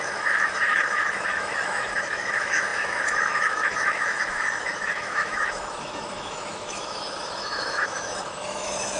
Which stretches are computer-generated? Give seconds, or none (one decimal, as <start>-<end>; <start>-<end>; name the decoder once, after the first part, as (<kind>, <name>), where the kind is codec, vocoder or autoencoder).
0.0-9.0 (autoencoder, DAC-VAE)